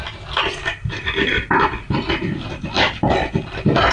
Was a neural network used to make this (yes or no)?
no